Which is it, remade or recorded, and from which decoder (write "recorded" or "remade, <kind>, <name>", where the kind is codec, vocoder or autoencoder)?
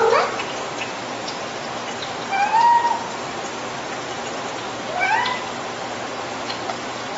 recorded